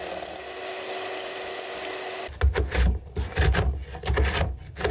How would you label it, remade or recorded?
recorded